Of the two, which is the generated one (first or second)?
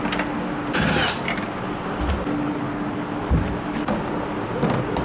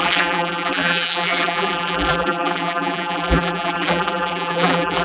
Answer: second